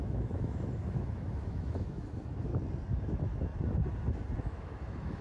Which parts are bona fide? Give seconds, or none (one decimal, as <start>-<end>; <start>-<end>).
2.5-3.1; 3.5-4.4